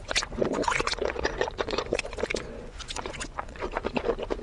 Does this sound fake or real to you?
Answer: fake